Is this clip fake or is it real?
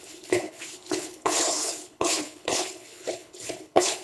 fake